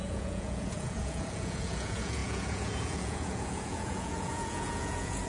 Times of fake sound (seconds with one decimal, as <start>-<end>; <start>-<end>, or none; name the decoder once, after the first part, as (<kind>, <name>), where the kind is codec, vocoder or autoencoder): 0.0-5.3 (vocoder, Vocos)